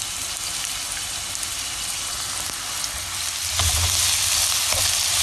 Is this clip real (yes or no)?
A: yes